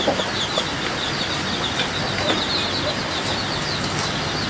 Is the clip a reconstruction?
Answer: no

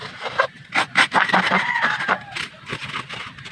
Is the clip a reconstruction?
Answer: no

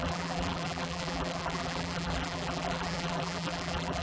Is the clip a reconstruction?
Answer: yes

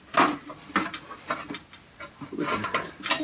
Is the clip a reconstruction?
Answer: no